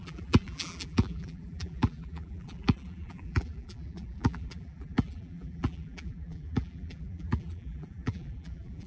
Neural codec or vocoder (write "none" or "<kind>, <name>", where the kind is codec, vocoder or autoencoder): vocoder, BigVGAN v2